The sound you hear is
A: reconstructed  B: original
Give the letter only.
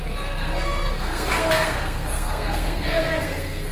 A